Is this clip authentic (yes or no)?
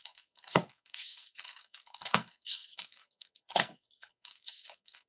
no